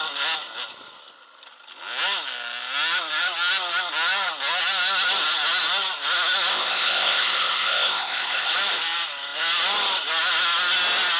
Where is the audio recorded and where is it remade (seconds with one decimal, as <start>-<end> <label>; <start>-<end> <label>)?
0.0-6.5 recorded; 6.5-8.5 remade; 8.5-11.2 recorded